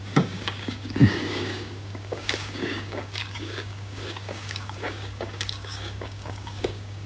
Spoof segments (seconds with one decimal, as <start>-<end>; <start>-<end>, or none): 0.0-7.1